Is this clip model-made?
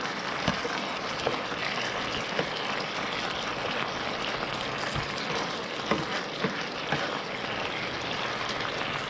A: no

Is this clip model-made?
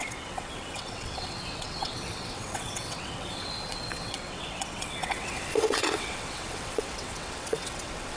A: yes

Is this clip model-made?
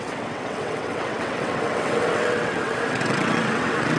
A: yes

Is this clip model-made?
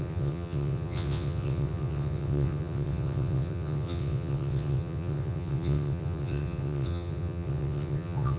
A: yes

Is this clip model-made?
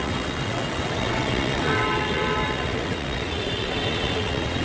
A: yes